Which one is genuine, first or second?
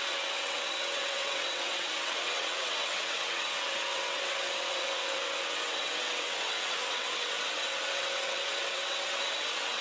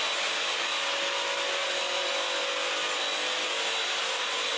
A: second